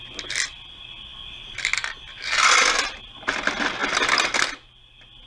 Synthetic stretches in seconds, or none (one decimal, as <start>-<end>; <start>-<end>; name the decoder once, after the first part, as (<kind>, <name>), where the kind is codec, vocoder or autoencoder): none